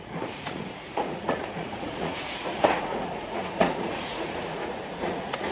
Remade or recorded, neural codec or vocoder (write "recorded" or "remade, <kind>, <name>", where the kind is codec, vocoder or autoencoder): remade, vocoder, Vocos